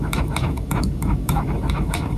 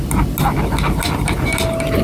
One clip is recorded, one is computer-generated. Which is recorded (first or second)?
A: second